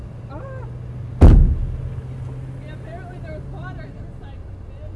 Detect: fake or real real